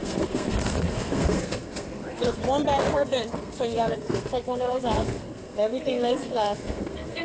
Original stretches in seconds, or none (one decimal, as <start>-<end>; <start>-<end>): 2.4-2.9